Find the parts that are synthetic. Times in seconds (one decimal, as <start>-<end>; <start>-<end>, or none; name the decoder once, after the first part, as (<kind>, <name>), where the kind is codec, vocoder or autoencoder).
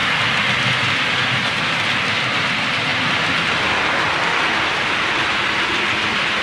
none